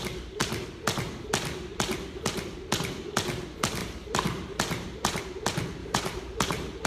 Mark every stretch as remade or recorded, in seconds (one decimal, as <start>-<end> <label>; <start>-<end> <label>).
0.0-3.8 recorded; 3.8-5.2 remade; 5.2-5.8 recorded; 5.8-6.9 remade